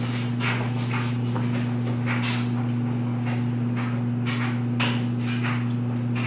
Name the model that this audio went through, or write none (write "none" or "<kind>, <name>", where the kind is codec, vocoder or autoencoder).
none